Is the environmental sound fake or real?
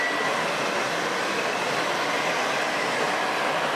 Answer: real